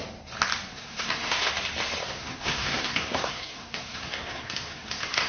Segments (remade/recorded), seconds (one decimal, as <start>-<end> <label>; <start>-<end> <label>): 0.0-0.7 recorded; 0.7-1.5 remade; 1.5-2.0 recorded; 2.0-5.3 remade